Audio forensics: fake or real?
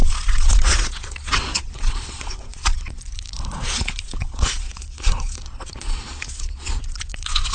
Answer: fake